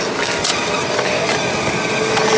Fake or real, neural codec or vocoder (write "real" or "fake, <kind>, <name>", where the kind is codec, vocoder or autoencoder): real